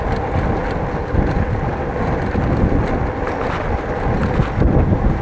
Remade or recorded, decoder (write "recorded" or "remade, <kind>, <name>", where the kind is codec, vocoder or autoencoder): recorded